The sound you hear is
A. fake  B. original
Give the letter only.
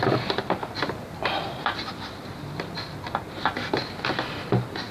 B